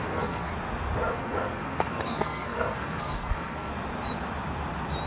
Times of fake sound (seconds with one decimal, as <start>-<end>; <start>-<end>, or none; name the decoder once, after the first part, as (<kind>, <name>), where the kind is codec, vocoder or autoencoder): 0.0-0.5 (codec, SNAC); 1.1-3.7